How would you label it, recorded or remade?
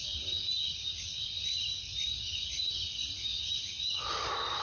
recorded